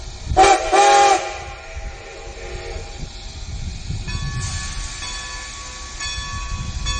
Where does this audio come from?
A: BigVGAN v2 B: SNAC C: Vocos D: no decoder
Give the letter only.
D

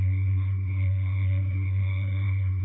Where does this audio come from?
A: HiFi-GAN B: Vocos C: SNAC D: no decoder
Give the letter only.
C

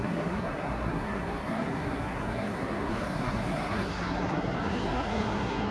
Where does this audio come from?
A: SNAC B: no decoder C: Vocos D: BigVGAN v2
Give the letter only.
A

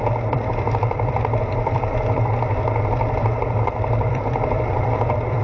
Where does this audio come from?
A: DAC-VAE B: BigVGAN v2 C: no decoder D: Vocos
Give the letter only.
B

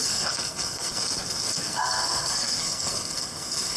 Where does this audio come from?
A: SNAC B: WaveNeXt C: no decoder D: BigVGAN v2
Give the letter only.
A